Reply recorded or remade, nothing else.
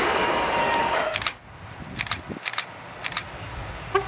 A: recorded